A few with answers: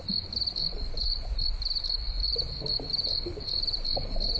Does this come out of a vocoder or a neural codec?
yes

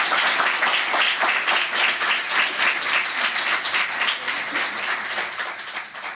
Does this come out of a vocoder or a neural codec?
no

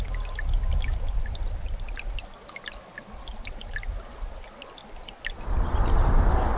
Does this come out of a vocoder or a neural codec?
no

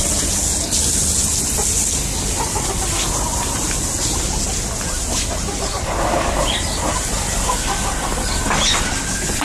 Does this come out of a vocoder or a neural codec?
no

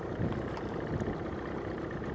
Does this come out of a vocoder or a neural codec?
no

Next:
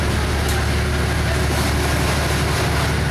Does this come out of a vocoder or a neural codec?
no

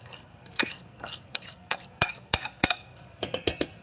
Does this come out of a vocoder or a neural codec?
yes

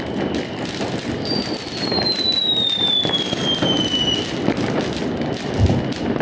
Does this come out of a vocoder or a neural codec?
no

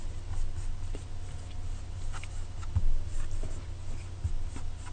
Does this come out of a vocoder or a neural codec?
no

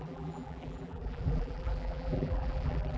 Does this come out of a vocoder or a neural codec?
yes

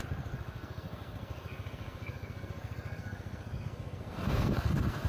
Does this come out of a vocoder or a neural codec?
yes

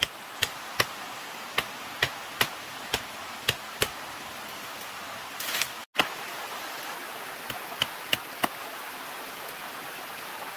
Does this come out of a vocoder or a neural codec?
no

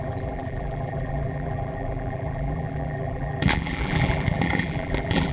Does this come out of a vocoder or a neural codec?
yes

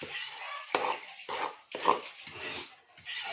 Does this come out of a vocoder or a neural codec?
no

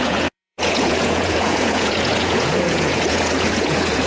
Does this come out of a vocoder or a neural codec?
yes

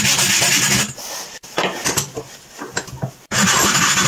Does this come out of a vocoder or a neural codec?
no